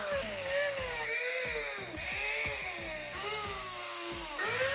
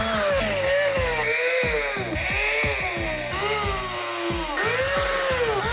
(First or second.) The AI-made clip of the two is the first